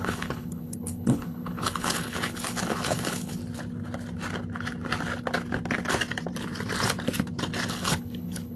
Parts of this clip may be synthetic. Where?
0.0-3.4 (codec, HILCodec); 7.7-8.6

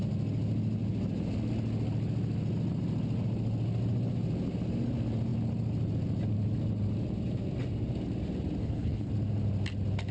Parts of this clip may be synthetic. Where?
8.6-9.1 (codec, HILCodec)

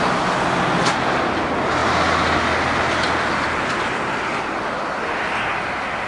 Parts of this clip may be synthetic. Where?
none

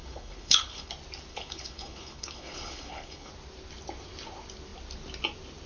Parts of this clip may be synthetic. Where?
0.0-0.9 (codec, HILCodec); 1.3-3.3

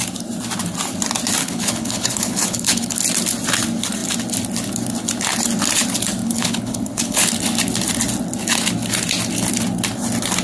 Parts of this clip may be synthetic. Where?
1.4-3.0 (codec, HILCodec); 6.2-7.3

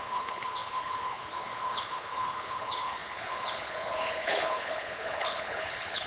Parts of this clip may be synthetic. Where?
0.0-6.1 (codec, HILCodec)

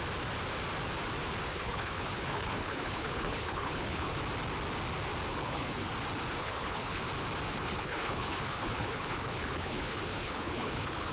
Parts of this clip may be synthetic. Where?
1.5-4.2 (codec, HILCodec); 5.3-5.9; 6.4-7.0; 7.5-11.1